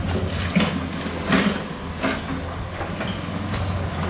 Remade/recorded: recorded